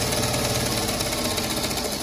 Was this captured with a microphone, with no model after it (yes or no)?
yes